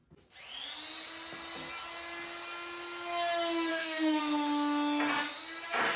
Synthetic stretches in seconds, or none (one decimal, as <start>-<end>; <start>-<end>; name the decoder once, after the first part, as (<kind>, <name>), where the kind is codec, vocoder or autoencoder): 3.7-4.2 (autoencoder, DAC-VAE)